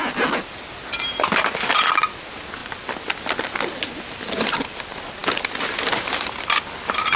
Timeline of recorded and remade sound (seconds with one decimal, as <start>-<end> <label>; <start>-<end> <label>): 0.0-7.2 recorded

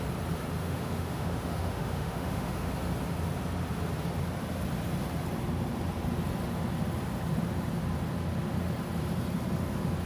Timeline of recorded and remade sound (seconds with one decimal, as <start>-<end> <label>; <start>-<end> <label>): 0.0-0.6 recorded; 0.6-2.7 remade; 2.7-10.1 recorded

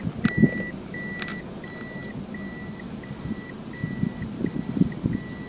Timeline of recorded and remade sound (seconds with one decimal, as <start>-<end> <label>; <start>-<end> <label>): 0.0-5.5 recorded

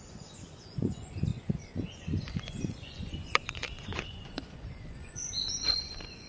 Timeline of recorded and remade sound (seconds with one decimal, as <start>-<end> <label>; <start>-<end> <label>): 0.0-6.3 remade